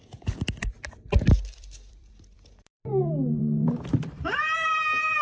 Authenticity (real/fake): fake